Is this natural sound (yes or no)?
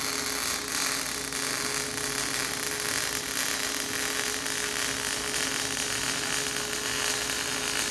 yes